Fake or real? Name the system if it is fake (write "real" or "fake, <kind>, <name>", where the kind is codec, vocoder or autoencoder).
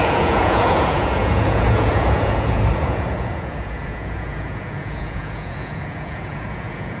fake, vocoder, Vocos